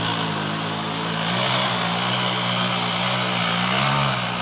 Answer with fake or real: real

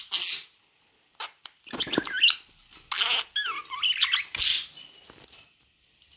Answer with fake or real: real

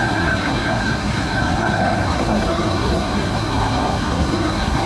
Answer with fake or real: fake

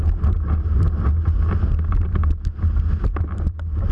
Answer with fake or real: real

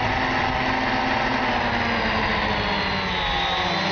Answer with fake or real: real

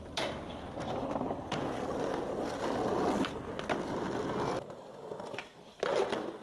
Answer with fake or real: real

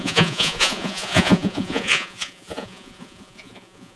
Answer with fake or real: fake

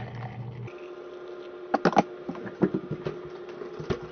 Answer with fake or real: real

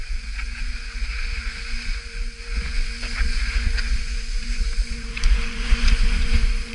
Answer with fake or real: fake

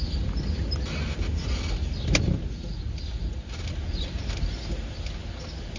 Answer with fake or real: real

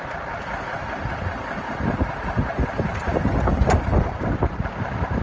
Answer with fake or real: real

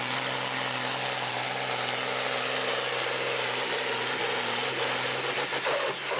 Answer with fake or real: real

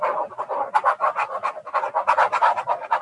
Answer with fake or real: real